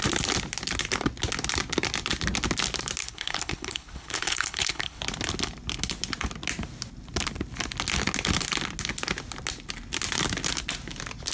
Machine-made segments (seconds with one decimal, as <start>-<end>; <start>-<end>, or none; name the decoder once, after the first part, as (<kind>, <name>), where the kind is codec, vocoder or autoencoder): 3.0-5.0 (codec, HILCodec)